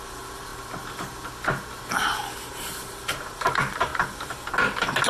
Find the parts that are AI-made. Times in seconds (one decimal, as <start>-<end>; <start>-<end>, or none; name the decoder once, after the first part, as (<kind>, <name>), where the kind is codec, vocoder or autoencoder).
0.0-0.5 (vocoder, BigVGAN v2); 2.5-3.9

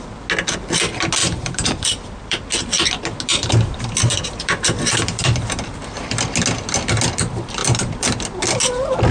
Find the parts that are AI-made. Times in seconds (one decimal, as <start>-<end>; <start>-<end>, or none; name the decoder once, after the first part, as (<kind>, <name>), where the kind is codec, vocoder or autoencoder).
1.2-2.4 (vocoder, BigVGAN v2); 3.3-6.2; 7.6-8.4

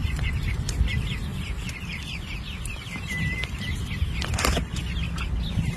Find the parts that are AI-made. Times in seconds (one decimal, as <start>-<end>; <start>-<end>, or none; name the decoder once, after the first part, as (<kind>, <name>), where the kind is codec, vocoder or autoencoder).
1.3-4.8 (vocoder, BigVGAN v2)

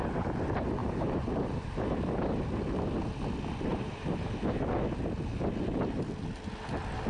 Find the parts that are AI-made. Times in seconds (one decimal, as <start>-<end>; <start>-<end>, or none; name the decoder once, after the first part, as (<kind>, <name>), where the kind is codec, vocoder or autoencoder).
0.8-2.0 (vocoder, BigVGAN v2); 3.7-4.7

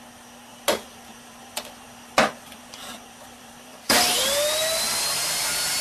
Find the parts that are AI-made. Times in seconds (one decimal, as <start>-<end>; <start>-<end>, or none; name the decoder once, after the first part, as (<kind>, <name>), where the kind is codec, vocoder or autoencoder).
0.5-4.0 (vocoder, BigVGAN v2)

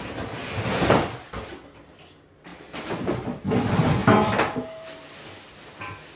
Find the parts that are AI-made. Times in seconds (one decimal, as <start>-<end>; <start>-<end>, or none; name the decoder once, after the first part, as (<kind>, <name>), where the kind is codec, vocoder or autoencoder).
4.0-5.5 (vocoder, BigVGAN v2)